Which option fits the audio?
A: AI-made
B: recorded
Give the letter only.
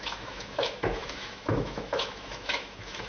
A